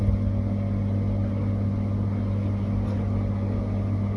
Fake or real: real